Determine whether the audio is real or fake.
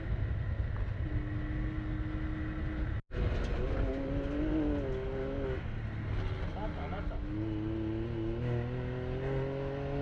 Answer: real